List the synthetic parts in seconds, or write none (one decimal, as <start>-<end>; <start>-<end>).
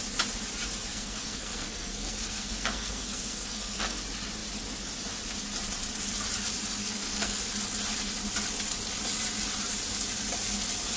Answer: 0.9-4.0; 6.8-7.4